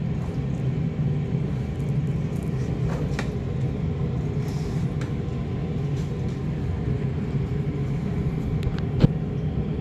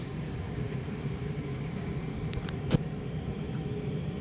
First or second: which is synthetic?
second